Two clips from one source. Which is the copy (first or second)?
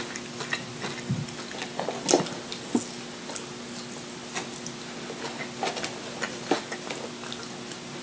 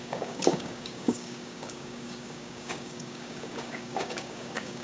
second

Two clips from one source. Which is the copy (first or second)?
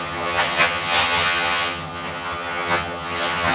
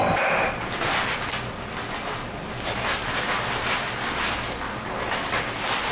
first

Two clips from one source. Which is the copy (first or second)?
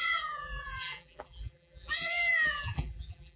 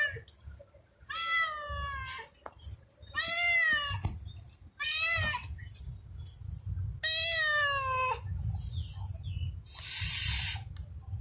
first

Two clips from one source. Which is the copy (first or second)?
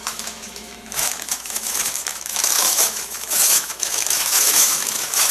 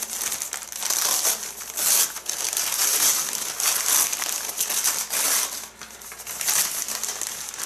first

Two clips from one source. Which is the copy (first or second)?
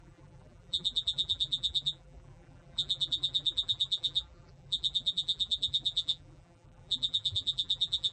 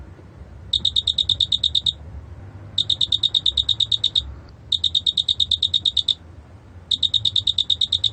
first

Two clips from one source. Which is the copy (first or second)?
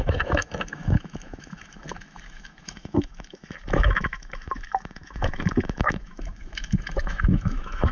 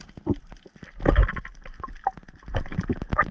first